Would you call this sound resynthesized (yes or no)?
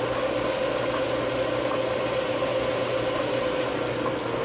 no